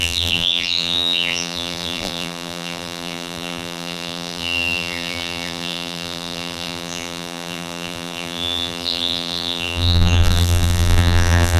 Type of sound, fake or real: fake